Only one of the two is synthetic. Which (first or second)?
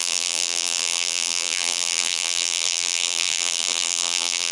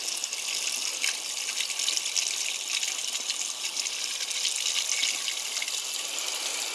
first